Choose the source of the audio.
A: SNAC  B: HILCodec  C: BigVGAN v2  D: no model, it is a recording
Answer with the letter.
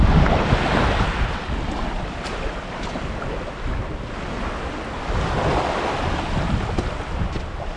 D